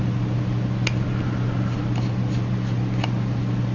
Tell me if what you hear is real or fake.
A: real